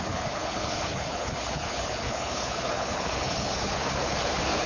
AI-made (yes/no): yes